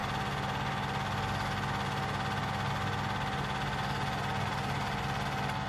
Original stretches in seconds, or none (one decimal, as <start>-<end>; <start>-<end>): 0.0-5.7